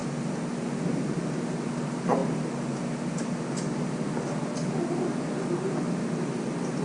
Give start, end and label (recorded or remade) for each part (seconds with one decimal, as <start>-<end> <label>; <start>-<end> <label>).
0.0-6.8 recorded